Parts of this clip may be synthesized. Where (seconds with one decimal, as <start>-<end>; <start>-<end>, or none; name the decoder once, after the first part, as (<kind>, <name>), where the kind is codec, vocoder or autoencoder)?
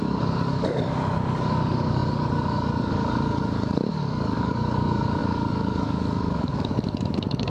0.0-7.5 (codec, DAC)